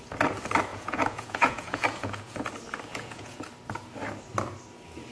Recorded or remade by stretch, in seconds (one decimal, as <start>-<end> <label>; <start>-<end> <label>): 0.0-0.7 recorded; 0.7-2.5 remade; 2.5-2.9 recorded; 2.9-3.4 remade; 3.4-5.1 recorded